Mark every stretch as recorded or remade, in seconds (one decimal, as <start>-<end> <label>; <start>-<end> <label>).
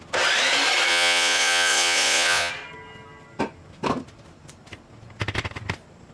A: 0.0-0.9 recorded; 0.9-2.5 remade; 2.5-6.1 recorded